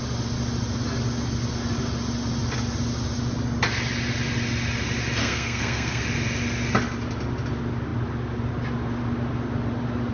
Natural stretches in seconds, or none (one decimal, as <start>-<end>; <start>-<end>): 0.0-5.2; 6.0-10.1